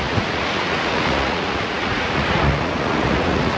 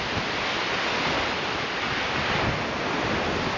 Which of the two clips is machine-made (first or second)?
first